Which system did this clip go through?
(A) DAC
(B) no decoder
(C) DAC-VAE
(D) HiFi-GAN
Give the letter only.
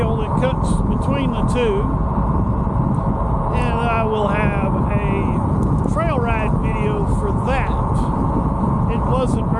B